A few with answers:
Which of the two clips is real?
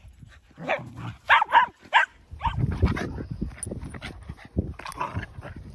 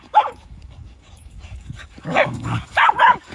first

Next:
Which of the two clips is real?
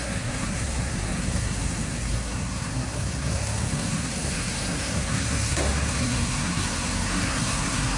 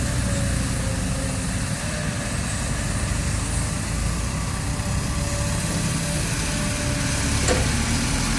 second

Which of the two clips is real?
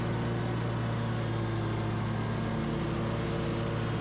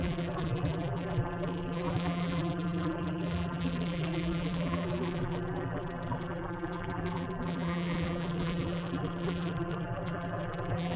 first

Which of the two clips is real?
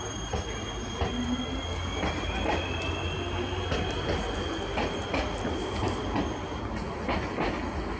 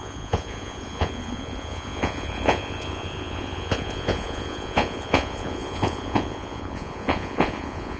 first